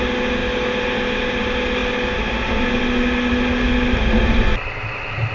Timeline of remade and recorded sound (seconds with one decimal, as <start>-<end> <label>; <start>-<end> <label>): 0.0-5.3 recorded